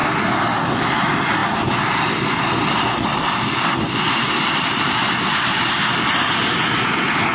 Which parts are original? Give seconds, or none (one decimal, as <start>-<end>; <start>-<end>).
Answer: 0.0-7.3